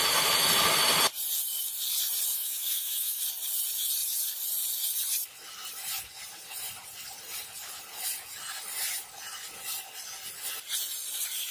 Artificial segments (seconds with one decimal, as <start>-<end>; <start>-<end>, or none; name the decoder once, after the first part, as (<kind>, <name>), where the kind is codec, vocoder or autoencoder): 2.3-3.2 (autoencoder, DAC-VAE)